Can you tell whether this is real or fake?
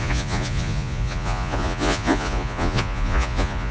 fake